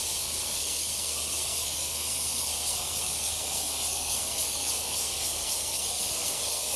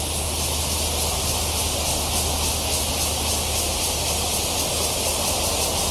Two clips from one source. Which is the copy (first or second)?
first